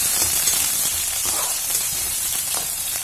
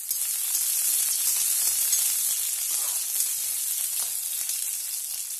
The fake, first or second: first